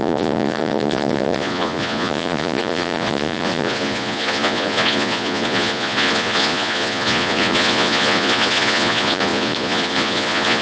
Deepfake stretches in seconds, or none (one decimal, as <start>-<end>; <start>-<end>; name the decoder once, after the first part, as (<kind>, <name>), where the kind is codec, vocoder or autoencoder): 0.0-10.6 (vocoder, Vocos)